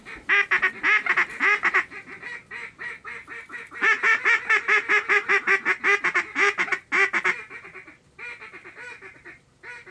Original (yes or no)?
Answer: yes